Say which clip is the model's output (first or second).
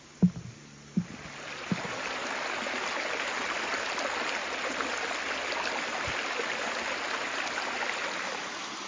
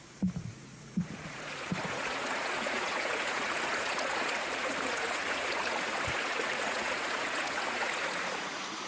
second